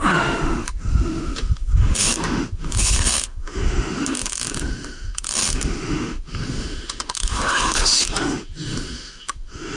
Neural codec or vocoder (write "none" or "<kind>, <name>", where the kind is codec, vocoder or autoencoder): autoencoder, DAC-VAE